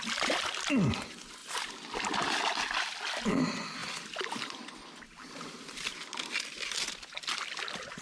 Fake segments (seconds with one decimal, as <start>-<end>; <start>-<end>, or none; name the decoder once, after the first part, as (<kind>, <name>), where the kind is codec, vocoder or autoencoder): none